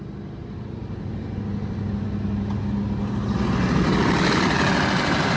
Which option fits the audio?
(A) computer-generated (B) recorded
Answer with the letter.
B